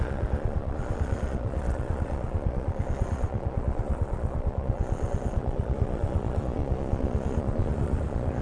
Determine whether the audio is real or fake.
fake